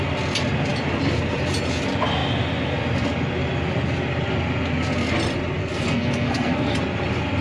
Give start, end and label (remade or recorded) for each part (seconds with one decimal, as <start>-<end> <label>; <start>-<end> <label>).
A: 0.0-5.6 recorded; 5.6-6.7 remade; 6.7-7.4 recorded